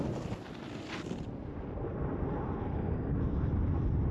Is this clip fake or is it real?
real